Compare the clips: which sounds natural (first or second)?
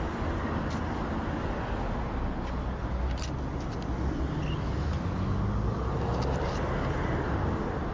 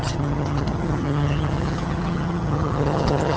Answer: first